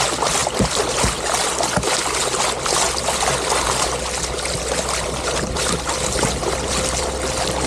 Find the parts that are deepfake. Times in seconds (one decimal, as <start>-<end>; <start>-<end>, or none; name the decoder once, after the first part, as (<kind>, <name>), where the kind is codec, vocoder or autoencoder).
none